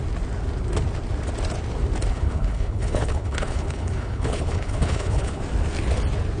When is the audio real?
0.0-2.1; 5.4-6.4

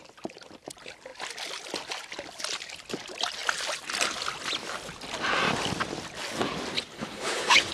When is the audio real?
0.0-6.9

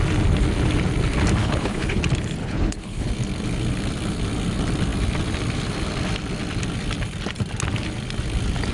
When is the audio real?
0.0-1.4; 2.0-2.4; 3.1-8.7

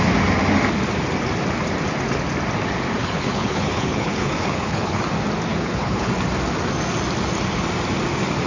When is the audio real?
0.0-3.0; 5.0-5.5; 6.1-8.5

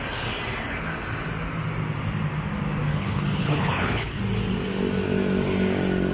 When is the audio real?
0.0-2.9; 4.2-6.1

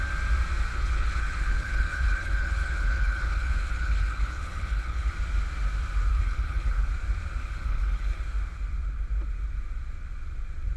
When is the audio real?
0.0-0.7; 5.1-6.1; 6.9-7.4; 8.2-10.8

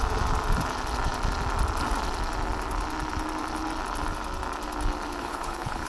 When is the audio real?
0.0-5.2